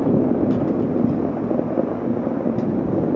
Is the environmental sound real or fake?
real